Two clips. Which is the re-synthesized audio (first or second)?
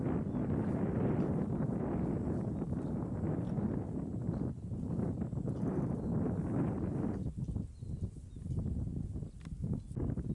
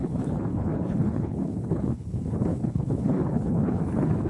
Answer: second